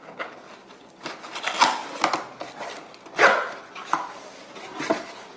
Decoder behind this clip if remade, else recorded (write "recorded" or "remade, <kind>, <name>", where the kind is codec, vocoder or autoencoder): recorded